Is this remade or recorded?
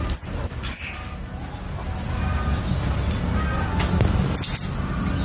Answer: recorded